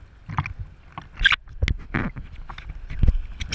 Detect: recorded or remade recorded